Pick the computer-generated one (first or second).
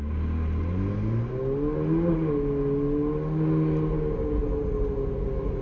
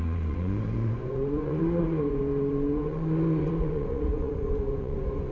second